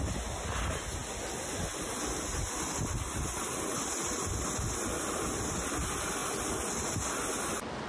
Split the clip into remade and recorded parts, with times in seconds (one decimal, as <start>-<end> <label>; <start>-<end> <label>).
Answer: 0.0-7.9 recorded